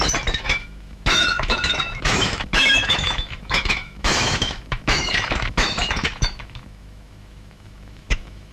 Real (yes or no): no